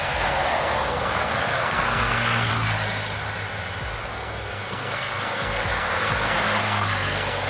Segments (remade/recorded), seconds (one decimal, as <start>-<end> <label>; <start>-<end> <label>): 0.0-2.5 remade; 2.5-4.0 recorded; 4.0-7.5 remade